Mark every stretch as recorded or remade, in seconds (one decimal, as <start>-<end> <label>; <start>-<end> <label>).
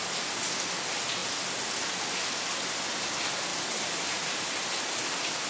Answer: 0.0-3.5 recorded; 3.5-4.5 remade; 4.5-5.5 recorded